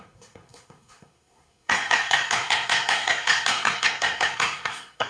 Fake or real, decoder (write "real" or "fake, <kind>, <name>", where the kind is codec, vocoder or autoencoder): fake, codec, SNAC